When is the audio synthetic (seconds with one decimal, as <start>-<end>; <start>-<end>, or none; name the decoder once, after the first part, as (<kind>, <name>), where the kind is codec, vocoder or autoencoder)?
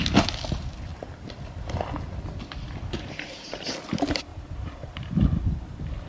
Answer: 4.3-5.1 (vocoder, BigVGAN v2)